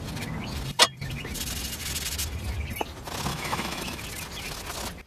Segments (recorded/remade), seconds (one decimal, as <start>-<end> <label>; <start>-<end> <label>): 0.0-3.3 recorded; 3.3-4.0 remade; 4.0-5.1 recorded